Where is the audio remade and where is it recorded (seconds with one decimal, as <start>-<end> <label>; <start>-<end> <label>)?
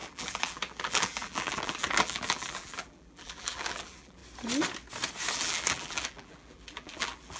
0.0-4.2 remade; 4.2-5.3 recorded; 5.3-7.4 remade